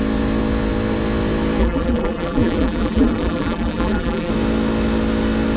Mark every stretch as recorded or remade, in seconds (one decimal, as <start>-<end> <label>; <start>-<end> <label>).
0.0-1.6 recorded; 1.6-4.3 remade; 4.3-5.6 recorded